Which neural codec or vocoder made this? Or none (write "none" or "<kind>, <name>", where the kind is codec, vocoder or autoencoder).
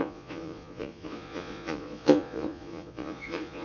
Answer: vocoder, Vocos